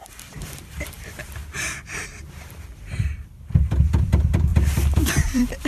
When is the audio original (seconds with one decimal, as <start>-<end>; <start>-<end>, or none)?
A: none